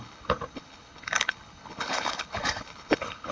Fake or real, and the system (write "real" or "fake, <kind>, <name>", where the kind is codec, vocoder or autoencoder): fake, codec, HILCodec